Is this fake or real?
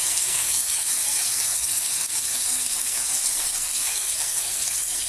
fake